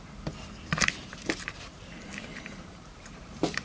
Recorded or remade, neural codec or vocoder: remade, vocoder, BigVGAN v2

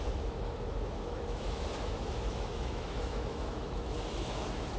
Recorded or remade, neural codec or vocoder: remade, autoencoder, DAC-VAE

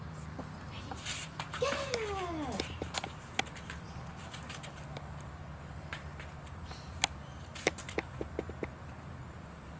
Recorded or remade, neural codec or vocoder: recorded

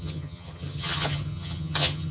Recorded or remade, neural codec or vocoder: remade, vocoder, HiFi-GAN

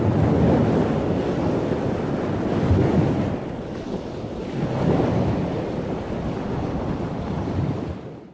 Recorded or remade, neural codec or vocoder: recorded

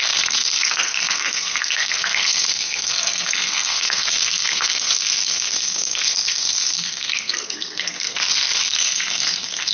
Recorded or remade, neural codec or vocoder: remade, codec, SNAC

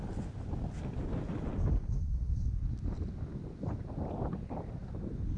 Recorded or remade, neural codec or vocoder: recorded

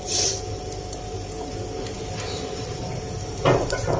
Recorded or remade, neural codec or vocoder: recorded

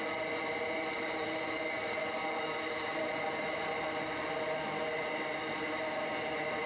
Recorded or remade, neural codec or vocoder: recorded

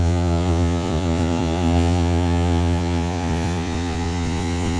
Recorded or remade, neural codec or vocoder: remade, vocoder, Vocos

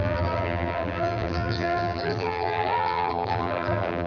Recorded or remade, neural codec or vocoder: remade, vocoder, BigVGAN v2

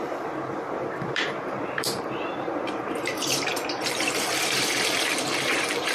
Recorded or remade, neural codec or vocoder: remade, vocoder, BigVGAN v2